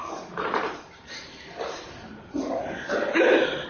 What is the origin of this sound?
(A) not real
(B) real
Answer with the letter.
B